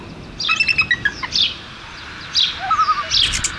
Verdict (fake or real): real